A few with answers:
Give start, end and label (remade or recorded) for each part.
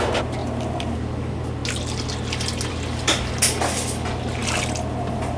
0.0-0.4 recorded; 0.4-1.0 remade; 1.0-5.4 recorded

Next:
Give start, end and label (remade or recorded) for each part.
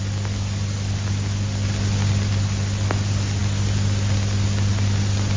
0.0-5.4 recorded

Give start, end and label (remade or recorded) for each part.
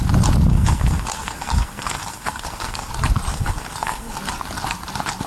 0.0-0.5 recorded; 0.5-2.9 remade; 2.9-3.3 recorded; 3.3-4.2 remade; 4.2-5.3 recorded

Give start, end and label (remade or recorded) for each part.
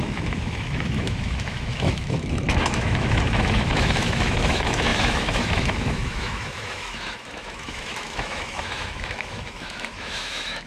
0.0-10.7 remade